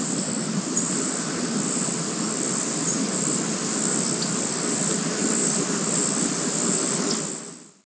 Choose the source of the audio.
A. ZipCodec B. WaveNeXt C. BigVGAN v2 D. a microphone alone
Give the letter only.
D